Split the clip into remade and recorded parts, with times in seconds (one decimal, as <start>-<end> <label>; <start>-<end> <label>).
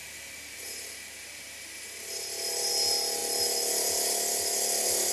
0.0-2.7 remade; 2.7-5.1 recorded